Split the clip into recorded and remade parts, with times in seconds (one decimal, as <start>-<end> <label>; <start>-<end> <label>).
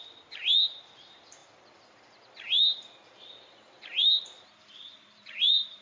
0.0-5.8 remade